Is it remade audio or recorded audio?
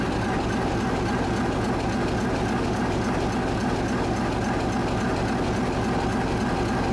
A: recorded